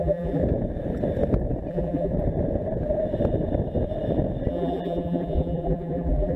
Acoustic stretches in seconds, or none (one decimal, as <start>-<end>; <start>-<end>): 0.4-1.7; 2.1-4.5